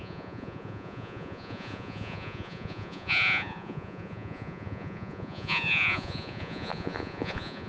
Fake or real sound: fake